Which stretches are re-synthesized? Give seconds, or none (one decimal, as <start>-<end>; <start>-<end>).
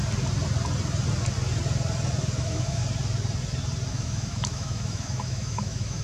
2.4-2.8; 3.9-6.0